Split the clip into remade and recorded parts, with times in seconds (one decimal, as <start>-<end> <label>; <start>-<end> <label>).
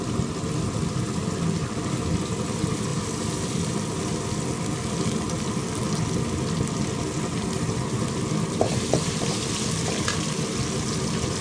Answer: 0.0-11.4 recorded